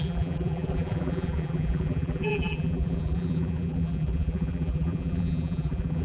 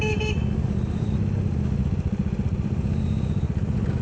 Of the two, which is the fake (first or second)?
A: first